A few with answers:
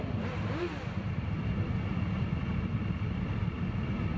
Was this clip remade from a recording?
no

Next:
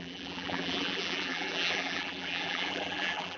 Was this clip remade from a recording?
yes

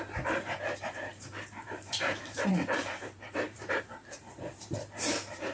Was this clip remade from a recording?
yes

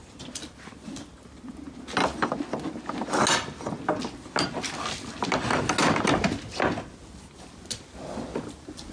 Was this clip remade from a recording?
no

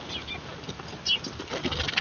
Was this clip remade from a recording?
no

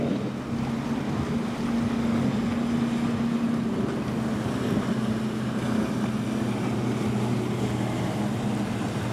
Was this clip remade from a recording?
no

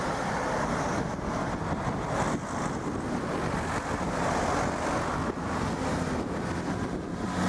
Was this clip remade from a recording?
no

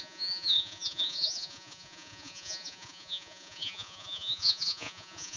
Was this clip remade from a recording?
yes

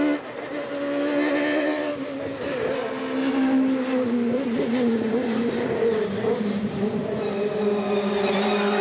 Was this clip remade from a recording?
no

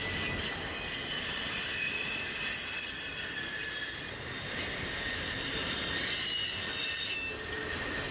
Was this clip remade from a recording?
no